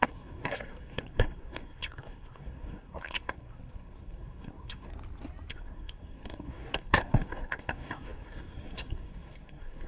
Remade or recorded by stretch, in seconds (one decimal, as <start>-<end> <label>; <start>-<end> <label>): 0.0-4.9 remade; 4.9-5.5 recorded; 5.5-9.9 remade